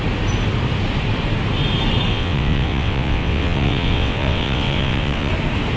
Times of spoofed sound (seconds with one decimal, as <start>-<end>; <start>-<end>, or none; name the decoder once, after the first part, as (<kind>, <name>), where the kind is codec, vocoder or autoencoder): 2.1-5.3 (vocoder, WaveNeXt)